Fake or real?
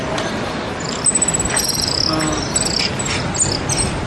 real